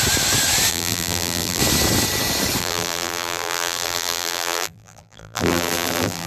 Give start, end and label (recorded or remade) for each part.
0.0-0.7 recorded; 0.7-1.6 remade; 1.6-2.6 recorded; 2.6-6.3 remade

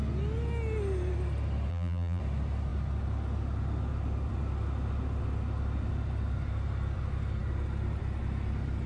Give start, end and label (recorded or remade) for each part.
0.0-1.7 recorded; 1.7-2.2 remade; 2.2-8.9 recorded

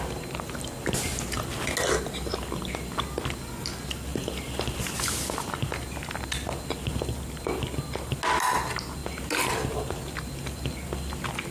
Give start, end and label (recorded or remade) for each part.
0.0-11.5 recorded

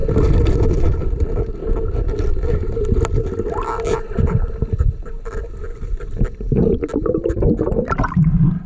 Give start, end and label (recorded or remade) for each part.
0.0-1.0 remade; 1.0-1.6 recorded; 1.6-2.8 remade; 2.8-3.9 recorded; 3.9-7.5 remade; 7.5-8.7 recorded

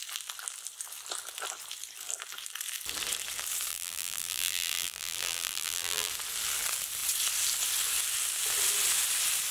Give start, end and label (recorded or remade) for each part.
0.0-3.7 recorded; 3.7-6.1 remade; 6.1-9.5 recorded

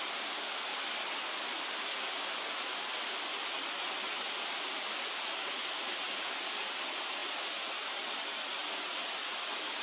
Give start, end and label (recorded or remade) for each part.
0.0-9.8 recorded

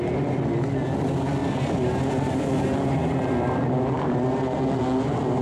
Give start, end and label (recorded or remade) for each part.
0.0-5.4 recorded